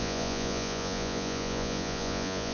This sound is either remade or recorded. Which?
remade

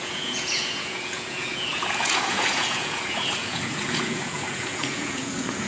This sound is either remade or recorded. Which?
remade